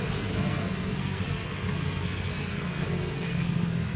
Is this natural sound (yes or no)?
no